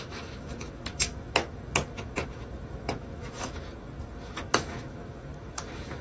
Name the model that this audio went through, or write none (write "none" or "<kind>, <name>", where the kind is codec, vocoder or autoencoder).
autoencoder, DAC-VAE